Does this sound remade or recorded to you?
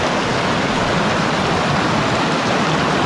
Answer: recorded